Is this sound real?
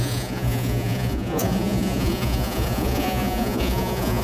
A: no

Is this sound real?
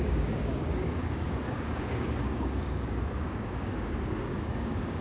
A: no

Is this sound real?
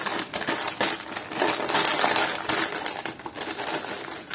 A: yes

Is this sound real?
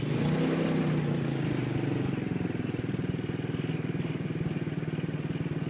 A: yes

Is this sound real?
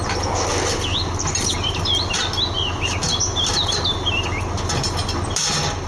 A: yes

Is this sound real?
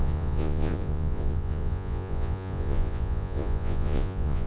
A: no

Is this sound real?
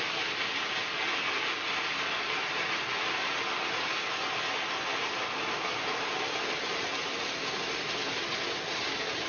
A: yes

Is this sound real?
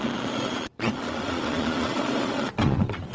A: no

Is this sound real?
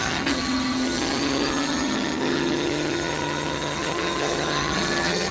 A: no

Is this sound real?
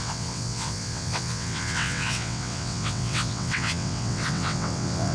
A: no